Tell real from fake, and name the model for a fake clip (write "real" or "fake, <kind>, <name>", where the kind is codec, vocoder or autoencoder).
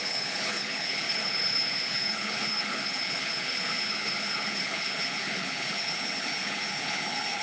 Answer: fake, codec, HILCodec